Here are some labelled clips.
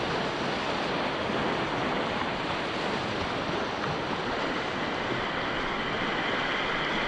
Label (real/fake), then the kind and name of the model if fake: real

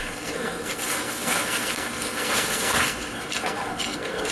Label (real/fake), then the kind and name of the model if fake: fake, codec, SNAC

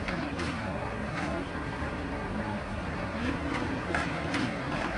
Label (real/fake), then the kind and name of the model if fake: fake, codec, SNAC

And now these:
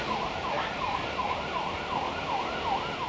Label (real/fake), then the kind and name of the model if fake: real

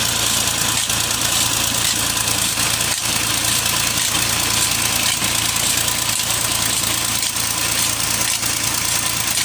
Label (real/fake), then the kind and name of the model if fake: real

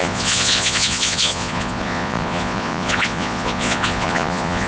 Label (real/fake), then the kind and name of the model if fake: fake, vocoder, Vocos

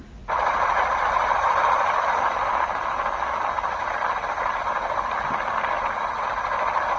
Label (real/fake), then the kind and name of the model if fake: real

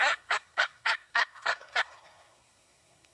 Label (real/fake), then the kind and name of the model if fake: fake, codec, SNAC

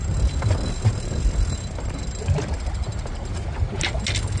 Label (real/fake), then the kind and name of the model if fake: real